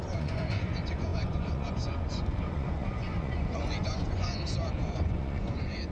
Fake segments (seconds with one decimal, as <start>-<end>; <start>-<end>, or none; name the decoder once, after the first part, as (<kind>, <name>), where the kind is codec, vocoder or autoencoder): 0.0-5.9 (vocoder, Vocos)